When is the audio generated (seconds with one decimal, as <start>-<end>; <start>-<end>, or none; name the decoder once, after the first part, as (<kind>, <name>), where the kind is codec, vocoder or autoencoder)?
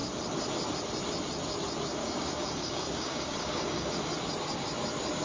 2.0-3.9 (codec, DAC)